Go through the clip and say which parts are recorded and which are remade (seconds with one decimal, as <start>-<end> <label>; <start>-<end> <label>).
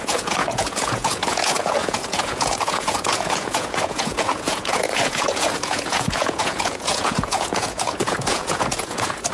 0.0-9.3 remade